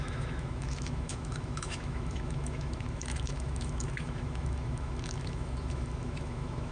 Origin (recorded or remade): remade